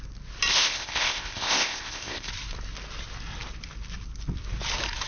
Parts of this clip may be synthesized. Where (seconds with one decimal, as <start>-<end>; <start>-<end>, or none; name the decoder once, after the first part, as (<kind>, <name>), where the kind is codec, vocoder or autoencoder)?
0.5-2.3 (codec, ZipCodec)